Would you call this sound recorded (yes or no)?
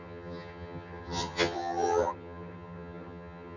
no